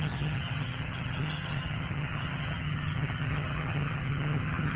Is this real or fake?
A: fake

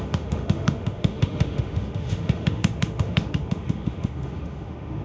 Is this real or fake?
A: fake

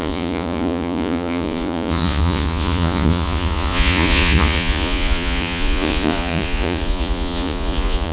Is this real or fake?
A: fake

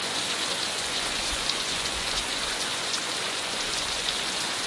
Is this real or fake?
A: fake